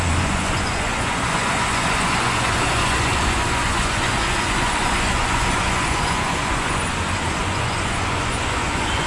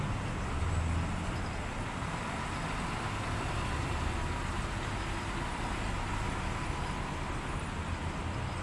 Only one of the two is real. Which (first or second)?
second